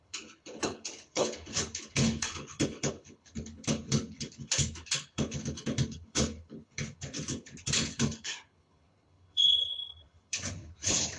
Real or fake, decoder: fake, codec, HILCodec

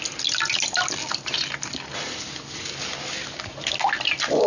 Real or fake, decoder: real